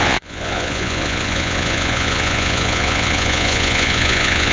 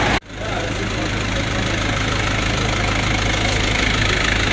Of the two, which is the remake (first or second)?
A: first